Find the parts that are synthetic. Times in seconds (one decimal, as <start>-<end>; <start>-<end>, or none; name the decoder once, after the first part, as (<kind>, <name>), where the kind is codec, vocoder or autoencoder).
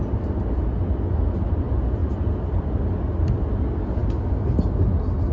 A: none